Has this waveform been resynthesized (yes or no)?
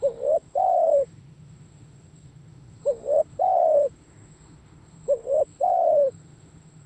yes